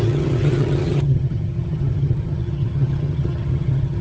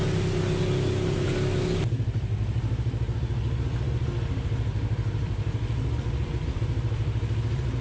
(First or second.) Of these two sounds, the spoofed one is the first